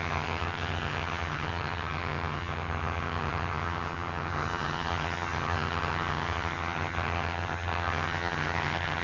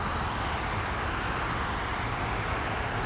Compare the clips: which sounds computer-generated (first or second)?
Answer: first